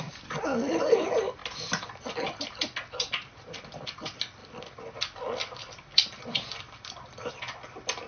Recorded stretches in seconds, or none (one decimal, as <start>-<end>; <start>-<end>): 0.0-4.4; 7.3-8.1